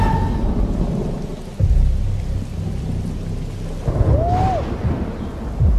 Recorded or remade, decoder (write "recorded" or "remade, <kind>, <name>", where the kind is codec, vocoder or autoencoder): recorded